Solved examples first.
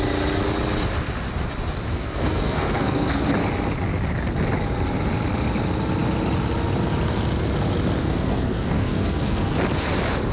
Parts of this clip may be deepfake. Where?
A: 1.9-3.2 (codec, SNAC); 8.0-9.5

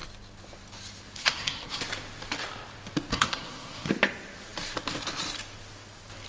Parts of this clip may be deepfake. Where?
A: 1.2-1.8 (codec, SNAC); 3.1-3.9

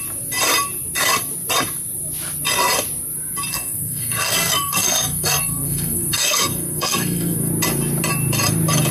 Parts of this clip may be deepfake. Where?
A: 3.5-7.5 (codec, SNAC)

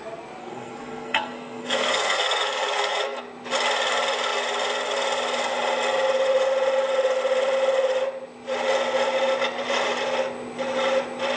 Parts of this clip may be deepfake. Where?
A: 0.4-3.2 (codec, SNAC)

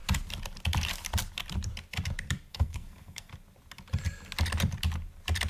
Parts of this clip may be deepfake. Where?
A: 2.5-3.3 (codec, SNAC)

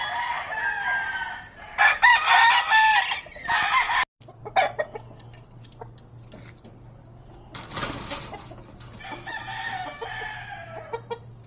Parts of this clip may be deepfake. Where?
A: none

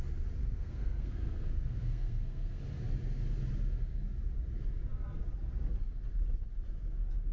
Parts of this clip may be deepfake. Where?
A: 0.4-2.6 (codec, SNAC)

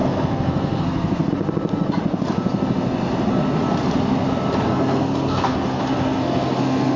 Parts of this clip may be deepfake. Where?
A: 0.0-1.3 (codec, SNAC); 4.7-7.0